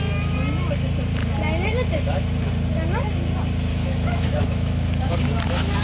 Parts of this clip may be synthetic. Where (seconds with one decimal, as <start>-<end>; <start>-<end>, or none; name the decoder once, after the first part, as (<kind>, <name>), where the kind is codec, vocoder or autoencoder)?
3.7-5.1 (autoencoder, DAC-VAE)